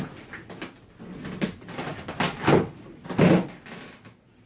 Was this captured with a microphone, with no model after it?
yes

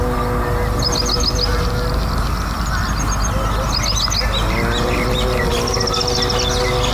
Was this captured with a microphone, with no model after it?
yes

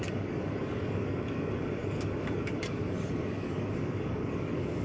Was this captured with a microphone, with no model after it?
no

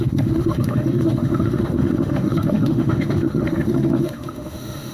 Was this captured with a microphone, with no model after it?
no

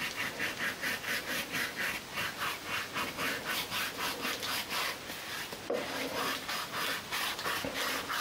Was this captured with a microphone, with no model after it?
yes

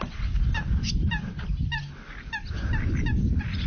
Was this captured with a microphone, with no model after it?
yes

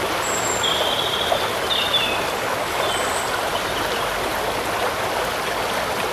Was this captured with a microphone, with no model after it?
yes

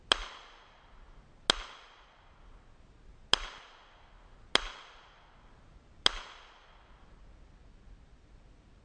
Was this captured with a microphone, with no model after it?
yes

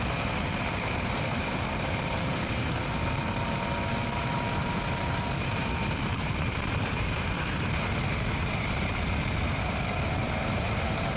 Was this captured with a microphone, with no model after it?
no